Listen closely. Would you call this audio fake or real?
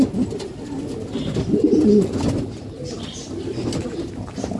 real